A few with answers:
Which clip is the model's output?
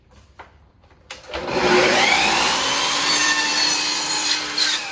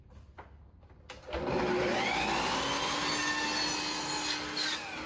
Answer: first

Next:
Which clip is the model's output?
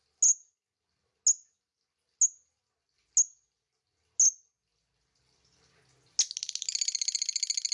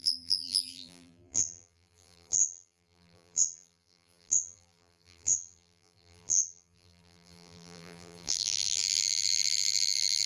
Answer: second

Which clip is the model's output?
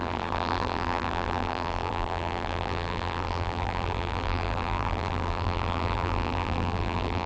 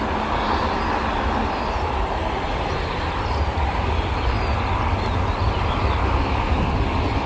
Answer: first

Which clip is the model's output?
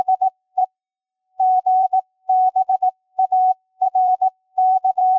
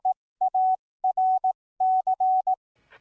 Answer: first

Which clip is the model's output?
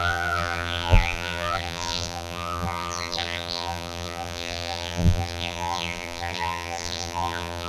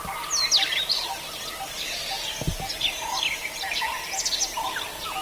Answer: first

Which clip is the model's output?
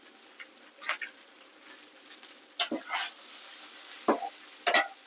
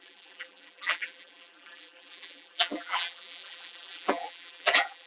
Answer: second